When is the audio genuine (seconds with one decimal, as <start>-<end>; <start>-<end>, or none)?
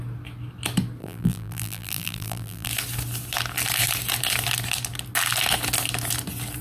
0.0-1.0; 2.7-6.6